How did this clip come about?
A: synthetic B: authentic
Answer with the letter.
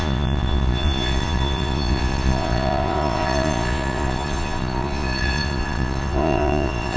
A